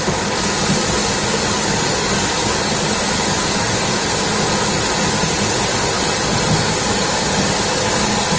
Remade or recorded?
recorded